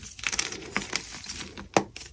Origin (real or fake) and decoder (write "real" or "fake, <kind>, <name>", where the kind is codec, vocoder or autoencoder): real